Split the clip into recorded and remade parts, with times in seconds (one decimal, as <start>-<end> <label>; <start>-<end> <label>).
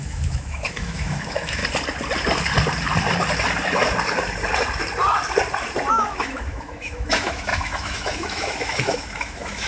0.0-1.6 remade; 1.6-5.9 recorded; 5.9-9.7 remade